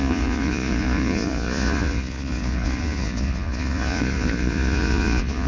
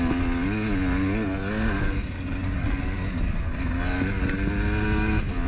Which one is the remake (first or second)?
first